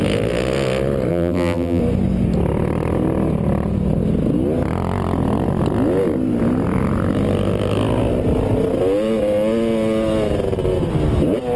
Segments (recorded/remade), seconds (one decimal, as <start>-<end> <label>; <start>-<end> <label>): 0.0-1.1 recorded; 1.1-1.8 remade; 1.8-11.6 recorded